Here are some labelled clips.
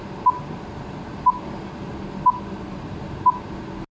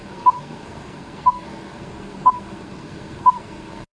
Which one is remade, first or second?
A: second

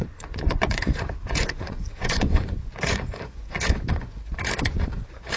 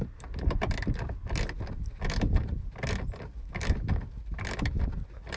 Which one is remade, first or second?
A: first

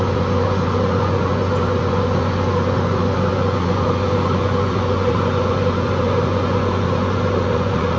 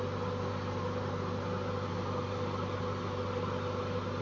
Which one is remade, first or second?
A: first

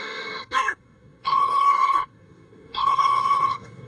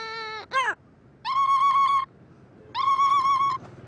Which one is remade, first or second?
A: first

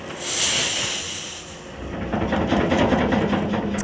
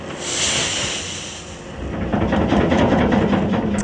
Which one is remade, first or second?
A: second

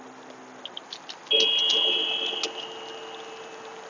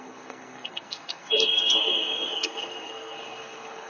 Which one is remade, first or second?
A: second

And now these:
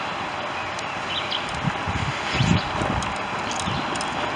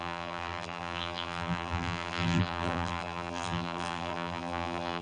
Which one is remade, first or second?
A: second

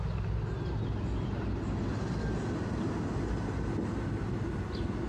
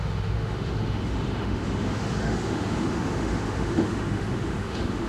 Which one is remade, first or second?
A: second